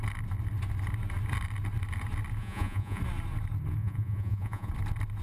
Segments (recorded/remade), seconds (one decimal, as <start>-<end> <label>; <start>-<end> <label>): 0.0-2.4 recorded; 2.4-3.0 remade; 3.0-3.8 recorded; 3.8-4.7 remade; 4.7-5.2 recorded